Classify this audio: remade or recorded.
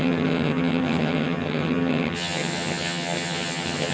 remade